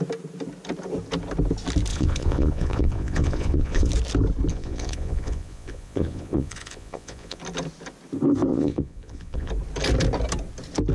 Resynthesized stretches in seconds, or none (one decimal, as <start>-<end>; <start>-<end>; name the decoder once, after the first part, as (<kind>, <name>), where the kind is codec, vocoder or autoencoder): 1.9-3.9 (vocoder, Vocos); 4.5-7.4; 8.5-9.5